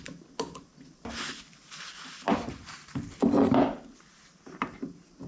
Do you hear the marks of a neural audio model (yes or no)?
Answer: no